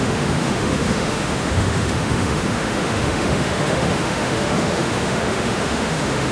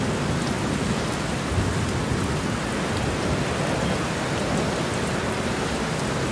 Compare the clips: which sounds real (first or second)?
second